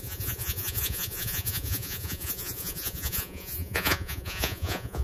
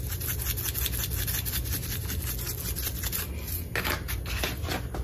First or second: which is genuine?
second